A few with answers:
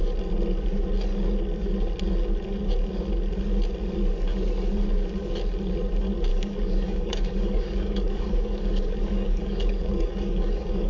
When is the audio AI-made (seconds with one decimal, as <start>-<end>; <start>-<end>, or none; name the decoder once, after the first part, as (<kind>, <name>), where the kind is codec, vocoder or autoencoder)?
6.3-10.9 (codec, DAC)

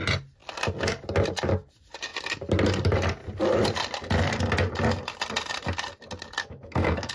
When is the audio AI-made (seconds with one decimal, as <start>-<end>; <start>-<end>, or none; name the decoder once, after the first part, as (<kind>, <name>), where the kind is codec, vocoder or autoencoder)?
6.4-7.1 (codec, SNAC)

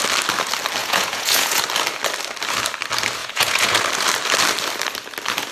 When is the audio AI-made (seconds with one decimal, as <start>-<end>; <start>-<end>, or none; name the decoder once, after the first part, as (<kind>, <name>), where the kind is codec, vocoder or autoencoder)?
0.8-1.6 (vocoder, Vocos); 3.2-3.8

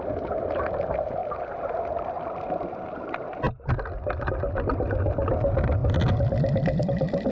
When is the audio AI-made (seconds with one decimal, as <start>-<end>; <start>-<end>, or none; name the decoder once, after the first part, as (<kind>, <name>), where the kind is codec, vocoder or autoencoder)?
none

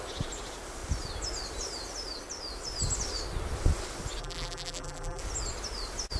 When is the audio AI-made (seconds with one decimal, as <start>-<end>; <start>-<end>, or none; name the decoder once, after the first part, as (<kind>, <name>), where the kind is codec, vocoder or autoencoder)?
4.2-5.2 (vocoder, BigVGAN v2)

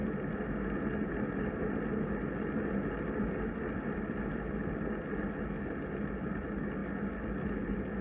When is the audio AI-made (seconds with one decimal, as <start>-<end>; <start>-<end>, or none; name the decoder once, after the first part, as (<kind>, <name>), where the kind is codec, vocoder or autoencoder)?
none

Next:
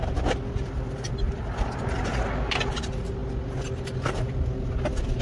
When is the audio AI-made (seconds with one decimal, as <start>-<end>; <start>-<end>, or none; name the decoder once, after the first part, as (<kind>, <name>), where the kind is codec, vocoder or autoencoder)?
none

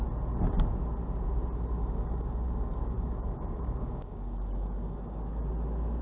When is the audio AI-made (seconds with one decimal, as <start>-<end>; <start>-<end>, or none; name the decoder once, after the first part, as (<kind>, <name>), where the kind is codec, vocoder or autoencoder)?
1.8-5.4 (codec, DAC)